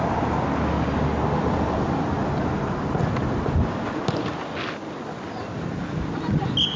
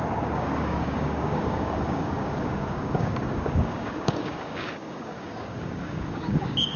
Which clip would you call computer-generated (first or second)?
second